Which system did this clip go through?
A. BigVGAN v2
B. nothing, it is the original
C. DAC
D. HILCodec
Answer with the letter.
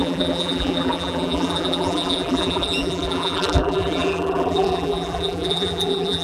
A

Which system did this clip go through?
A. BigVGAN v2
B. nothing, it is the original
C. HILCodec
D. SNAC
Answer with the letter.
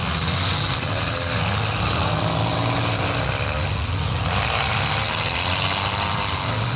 B